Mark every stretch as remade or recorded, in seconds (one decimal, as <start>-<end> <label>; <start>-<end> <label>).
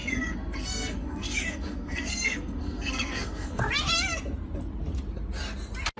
0.0-3.6 remade; 3.6-6.0 recorded